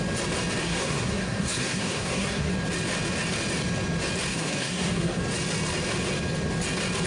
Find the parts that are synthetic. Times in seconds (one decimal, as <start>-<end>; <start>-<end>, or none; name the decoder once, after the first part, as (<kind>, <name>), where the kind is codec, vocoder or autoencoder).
0.6-2.5 (codec, SNAC); 4.3-5.2